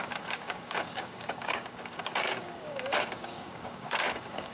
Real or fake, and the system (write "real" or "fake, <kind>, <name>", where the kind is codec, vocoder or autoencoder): fake, codec, DAC